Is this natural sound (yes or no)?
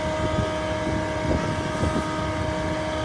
yes